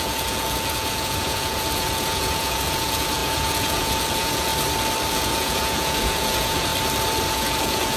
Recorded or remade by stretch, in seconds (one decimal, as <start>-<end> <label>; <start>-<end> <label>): 0.0-4.5 remade; 4.5-5.1 recorded; 5.1-6.7 remade; 6.7-7.3 recorded; 7.3-8.0 remade